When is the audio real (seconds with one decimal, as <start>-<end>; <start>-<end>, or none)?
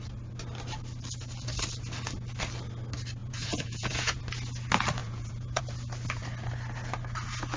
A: 0.0-3.2; 4.2-5.0; 5.6-7.6